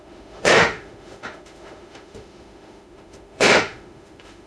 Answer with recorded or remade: remade